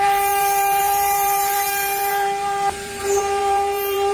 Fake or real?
fake